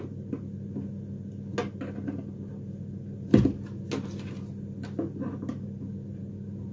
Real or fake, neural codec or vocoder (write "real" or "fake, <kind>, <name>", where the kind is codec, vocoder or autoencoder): real